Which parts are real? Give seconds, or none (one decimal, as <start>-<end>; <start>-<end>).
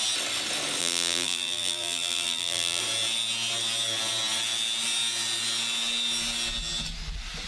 0.0-0.8; 2.8-7.5